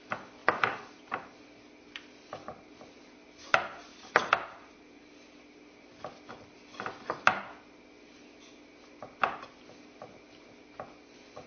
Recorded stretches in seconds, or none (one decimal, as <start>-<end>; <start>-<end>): 0.0-0.4; 1.3-2.4; 2.9-3.9; 5.0-11.5